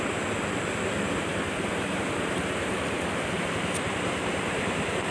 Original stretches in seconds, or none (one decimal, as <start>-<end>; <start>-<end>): 0.0-1.7